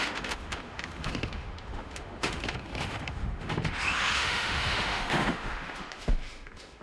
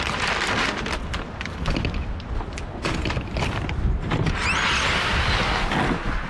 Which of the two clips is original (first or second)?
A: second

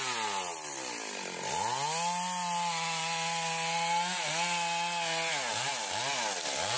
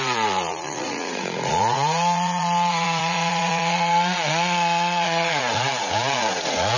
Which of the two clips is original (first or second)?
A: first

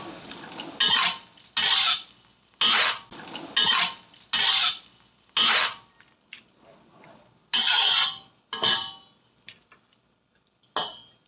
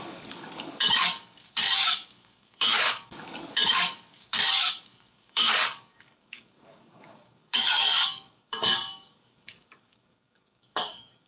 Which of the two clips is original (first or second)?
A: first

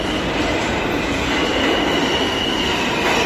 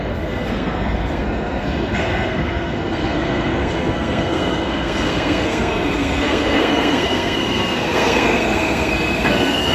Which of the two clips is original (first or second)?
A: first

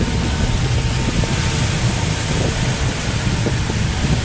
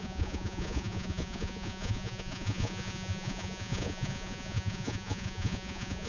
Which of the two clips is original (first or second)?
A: first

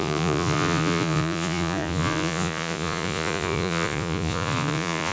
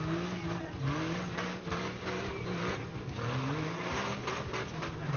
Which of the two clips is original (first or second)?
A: second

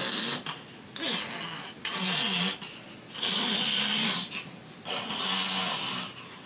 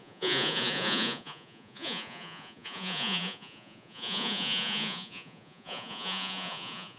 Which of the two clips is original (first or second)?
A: first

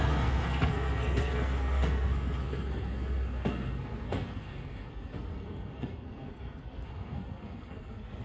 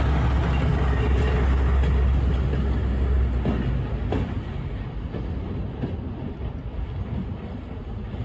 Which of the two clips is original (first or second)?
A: second